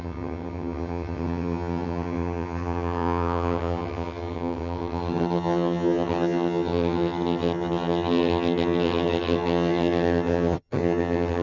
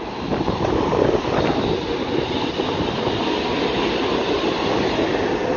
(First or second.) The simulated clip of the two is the first